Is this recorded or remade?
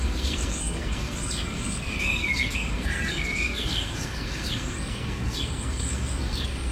remade